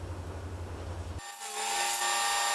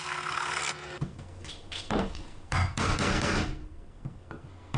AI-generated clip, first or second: second